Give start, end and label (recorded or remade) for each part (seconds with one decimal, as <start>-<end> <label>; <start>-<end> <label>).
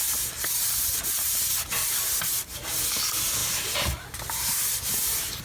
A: 0.0-0.9 recorded; 0.9-2.0 remade; 2.0-3.4 recorded; 3.4-5.4 remade